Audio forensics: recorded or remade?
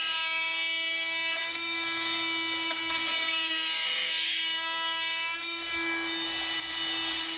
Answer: remade